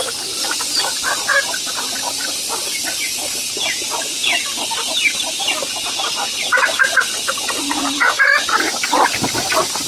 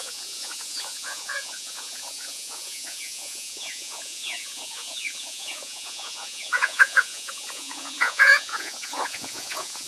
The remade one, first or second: second